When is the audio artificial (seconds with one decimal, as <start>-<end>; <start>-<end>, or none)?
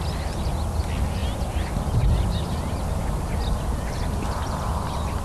none